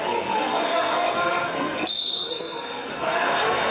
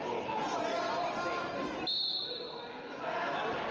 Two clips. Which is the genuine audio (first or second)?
second